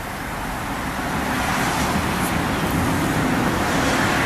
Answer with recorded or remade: recorded